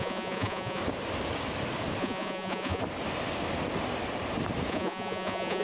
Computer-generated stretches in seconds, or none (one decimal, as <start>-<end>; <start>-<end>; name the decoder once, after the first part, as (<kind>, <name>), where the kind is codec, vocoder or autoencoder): 0.0-0.8 (vocoder, Vocos); 2.0-2.8; 4.7-5.6